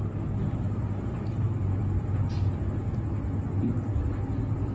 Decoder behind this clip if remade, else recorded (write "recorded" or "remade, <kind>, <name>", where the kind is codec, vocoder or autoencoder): recorded